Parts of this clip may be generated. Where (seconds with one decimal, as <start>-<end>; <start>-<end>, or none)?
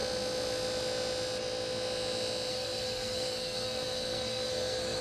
2.5-5.0